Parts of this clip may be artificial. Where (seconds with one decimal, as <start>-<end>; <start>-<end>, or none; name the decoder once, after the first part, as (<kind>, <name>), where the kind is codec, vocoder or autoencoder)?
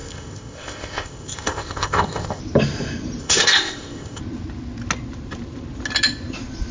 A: 0.0-2.4 (codec, ZipCodec); 3.2-4.2